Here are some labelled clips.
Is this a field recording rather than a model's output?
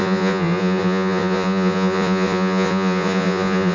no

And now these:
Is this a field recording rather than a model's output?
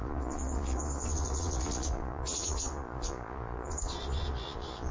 no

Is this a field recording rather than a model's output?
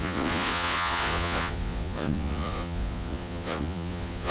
no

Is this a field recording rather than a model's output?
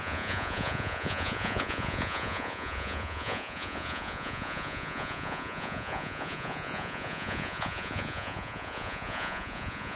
no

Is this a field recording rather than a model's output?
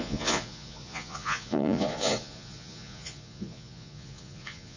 no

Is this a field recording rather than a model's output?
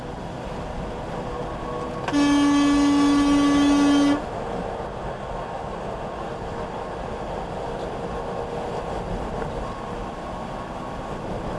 yes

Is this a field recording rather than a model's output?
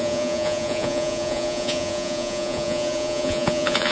no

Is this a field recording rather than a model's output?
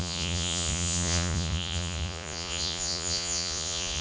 no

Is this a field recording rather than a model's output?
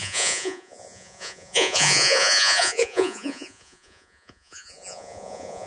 no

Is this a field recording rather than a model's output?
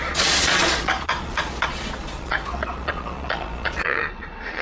no